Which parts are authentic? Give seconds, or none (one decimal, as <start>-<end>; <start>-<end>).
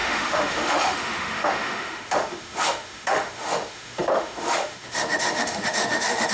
none